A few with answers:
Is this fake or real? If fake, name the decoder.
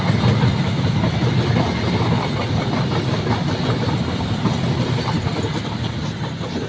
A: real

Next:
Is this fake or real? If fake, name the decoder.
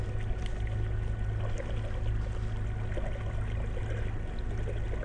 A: real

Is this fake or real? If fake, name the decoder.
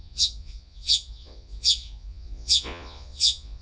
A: fake, vocoder, Vocos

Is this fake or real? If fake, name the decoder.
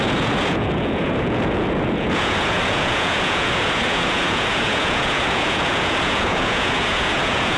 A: fake, vocoder, Vocos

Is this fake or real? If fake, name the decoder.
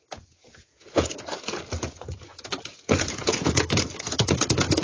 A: fake, vocoder, Vocos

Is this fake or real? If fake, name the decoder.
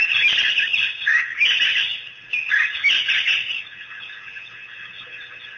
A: real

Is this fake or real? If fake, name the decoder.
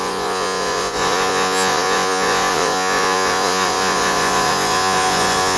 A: fake, vocoder, Vocos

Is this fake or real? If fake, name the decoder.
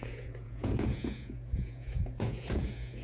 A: fake, vocoder, Vocos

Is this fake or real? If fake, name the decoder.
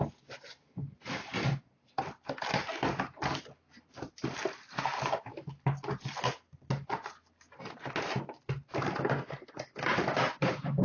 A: real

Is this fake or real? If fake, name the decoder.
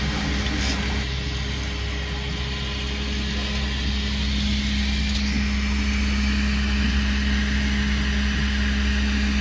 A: real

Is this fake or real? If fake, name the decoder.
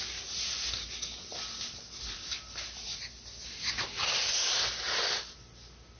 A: real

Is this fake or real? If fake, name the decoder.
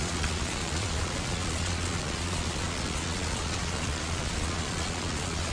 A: fake, vocoder, Vocos